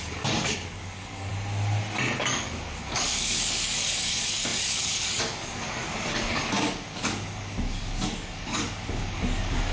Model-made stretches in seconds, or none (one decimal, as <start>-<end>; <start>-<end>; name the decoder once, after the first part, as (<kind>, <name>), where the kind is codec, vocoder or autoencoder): 0.0-1.3 (codec, DAC); 2.2-9.7